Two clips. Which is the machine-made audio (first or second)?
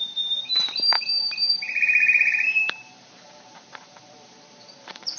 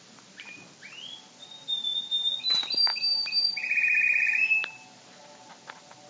first